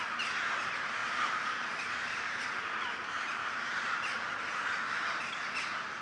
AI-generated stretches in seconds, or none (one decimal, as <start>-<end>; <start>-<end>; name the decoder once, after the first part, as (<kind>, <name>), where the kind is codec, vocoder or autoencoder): 1.0-4.6 (vocoder, BigVGAN v2)